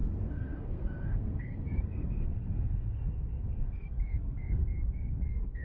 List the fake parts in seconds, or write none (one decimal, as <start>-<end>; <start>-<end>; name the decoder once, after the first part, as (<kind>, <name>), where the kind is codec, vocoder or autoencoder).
0.0-5.6 (codec, SNAC)